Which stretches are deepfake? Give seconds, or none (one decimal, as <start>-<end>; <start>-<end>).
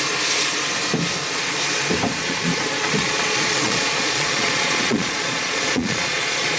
2.2-6.6